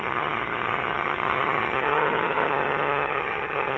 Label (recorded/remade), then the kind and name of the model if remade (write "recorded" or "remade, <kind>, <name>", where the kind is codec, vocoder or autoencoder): remade, vocoder, HiFi-GAN